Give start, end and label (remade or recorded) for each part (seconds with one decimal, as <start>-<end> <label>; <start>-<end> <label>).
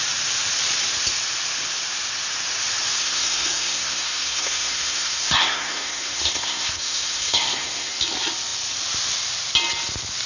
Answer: 0.0-3.0 recorded; 3.0-7.9 remade; 7.9-10.3 recorded